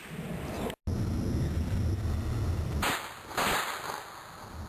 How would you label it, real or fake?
real